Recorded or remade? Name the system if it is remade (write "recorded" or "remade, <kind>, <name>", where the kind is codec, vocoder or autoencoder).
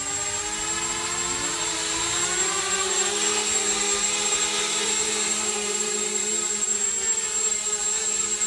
recorded